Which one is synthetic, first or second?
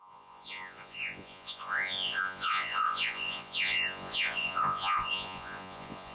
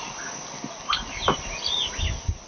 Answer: first